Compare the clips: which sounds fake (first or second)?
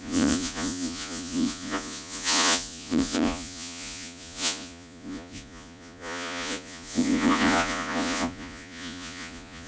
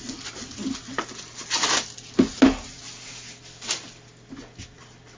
first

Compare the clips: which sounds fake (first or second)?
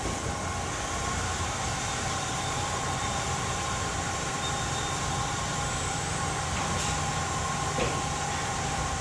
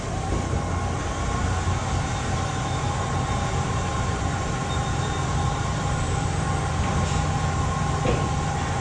first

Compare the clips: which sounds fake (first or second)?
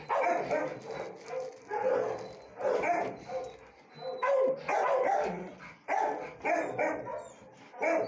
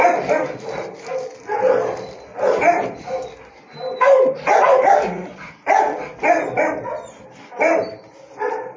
second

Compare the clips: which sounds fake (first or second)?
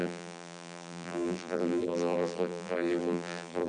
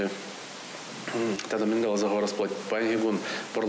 first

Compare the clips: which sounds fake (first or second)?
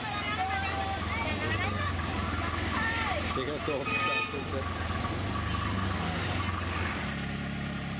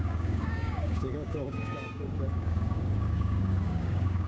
second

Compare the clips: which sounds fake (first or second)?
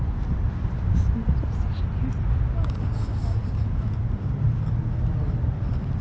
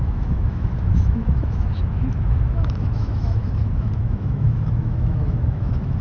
second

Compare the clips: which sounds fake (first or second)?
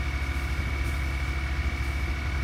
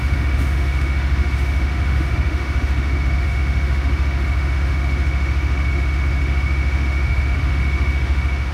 second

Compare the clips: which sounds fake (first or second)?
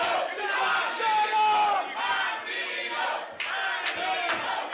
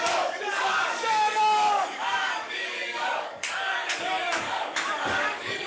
second